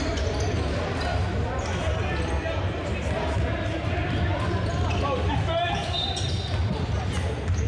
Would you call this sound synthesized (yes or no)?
no